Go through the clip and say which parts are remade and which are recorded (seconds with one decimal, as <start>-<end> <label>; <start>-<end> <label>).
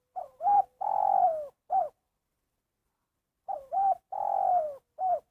0.0-1.0 remade; 1.0-1.8 recorded; 1.8-5.3 remade